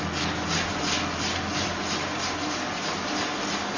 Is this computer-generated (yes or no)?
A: no